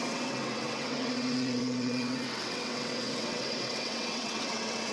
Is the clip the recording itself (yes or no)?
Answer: no